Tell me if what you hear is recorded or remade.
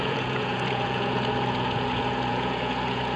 remade